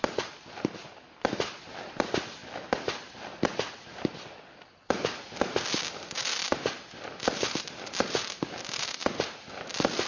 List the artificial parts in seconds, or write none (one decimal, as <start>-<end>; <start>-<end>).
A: none

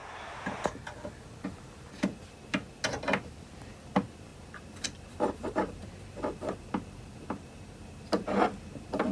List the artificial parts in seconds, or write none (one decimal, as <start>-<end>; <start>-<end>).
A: none